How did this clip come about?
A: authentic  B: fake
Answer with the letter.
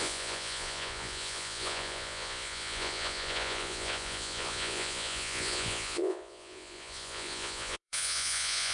B